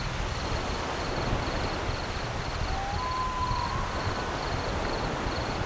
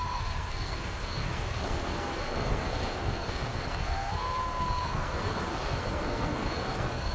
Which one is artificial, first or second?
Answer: second